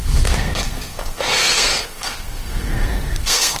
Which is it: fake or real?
fake